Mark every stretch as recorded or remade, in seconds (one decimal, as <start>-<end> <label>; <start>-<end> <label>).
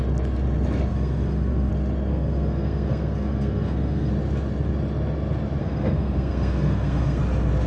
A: 0.0-0.9 recorded; 0.9-1.7 remade; 1.7-2.1 recorded; 2.1-4.1 remade; 4.1-5.6 recorded; 5.6-7.2 remade; 7.2-7.7 recorded